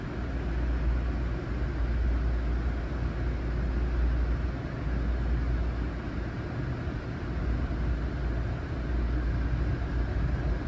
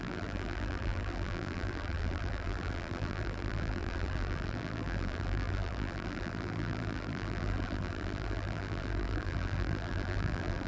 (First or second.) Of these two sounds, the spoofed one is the second